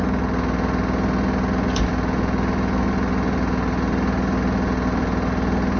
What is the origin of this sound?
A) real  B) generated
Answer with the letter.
A